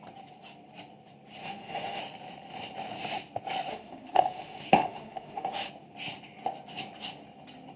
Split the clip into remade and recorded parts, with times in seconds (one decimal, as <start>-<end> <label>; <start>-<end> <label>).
0.0-1.4 recorded; 1.4-2.0 remade; 2.0-3.7 recorded; 3.7-5.7 remade; 5.7-7.8 recorded